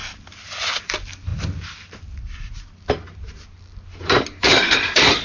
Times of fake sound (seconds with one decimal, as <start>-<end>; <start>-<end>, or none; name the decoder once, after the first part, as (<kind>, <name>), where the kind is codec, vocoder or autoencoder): 0.8-1.3 (vocoder, BigVGAN v2); 4.4-5.2